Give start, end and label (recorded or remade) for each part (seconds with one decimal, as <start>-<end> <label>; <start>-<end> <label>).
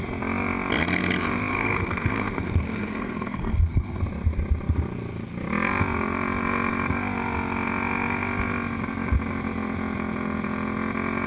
0.0-1.5 recorded; 1.5-4.0 remade; 4.0-11.3 recorded